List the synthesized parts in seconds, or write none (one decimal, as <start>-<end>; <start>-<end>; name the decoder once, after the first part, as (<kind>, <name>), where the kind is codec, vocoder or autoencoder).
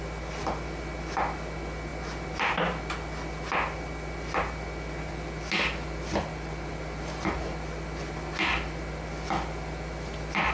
none